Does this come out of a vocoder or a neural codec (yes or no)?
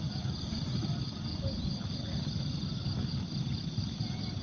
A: no